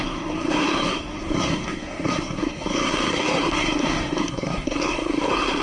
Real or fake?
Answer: fake